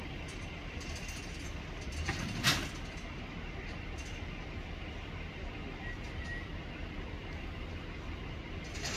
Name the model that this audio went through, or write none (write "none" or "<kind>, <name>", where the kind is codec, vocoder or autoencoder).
none